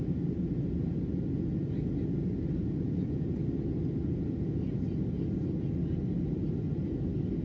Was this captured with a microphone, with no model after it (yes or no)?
yes